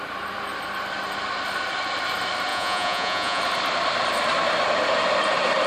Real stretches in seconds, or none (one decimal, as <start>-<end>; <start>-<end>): 0.0-2.5; 3.4-5.7